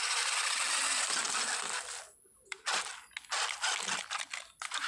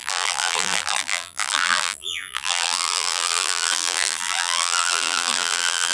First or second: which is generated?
second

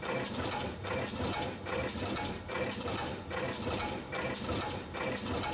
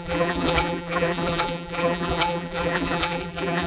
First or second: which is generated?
second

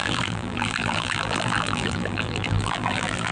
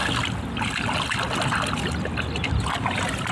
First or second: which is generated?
first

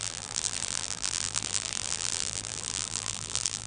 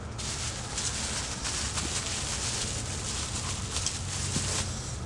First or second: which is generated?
first